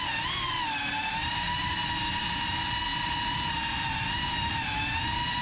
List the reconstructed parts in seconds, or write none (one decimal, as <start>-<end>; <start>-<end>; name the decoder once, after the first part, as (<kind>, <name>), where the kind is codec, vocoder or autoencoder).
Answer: 1.2-2.5 (vocoder, BigVGAN v2); 2.9-4.8